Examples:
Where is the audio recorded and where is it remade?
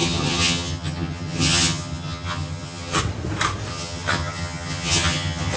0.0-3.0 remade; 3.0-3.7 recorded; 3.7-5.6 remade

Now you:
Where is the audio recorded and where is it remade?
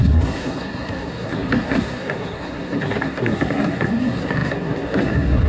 0.0-5.5 remade